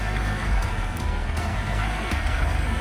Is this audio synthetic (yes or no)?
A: yes